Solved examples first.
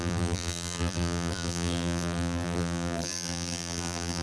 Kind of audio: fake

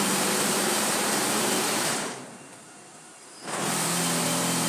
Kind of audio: fake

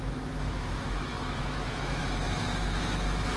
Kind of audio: fake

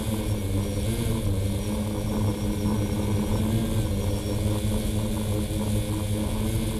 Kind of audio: real